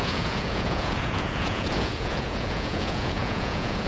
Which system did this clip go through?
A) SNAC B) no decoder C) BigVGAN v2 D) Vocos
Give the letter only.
D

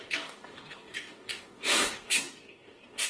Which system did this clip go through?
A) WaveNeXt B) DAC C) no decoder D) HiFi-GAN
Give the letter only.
B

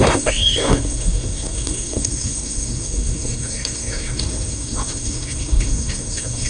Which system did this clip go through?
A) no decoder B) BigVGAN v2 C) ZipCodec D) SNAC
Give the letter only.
D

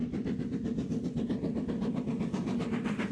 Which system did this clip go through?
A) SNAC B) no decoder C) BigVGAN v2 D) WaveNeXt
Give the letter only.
B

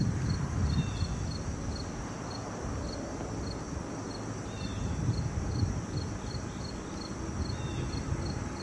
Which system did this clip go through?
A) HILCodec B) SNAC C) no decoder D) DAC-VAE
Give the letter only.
C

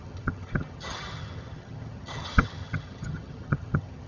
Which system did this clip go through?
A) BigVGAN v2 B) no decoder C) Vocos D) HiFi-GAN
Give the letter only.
D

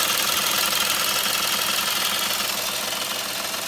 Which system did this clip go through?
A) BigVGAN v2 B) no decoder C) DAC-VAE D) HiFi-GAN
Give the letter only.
B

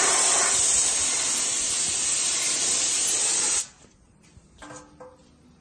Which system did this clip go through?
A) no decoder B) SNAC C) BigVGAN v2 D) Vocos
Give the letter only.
A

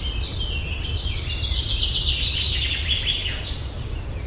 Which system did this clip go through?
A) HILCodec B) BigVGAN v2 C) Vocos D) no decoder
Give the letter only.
D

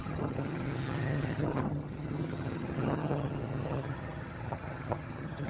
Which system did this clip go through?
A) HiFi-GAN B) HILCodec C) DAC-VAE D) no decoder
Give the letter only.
A